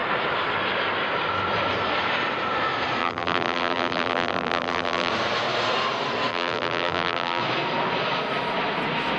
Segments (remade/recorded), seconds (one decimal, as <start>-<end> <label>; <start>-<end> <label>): 0.0-3.0 recorded; 3.0-5.1 remade; 5.1-6.3 recorded; 6.3-7.4 remade; 7.4-9.2 recorded